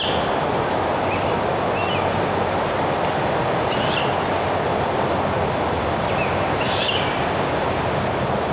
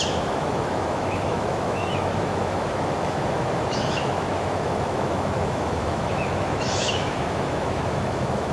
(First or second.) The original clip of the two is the first